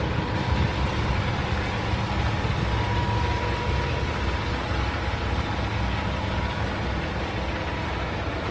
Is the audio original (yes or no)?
yes